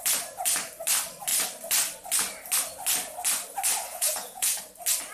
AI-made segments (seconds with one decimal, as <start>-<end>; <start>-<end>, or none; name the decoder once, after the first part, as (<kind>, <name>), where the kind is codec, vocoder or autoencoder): 3.9-4.6 (vocoder, Vocos)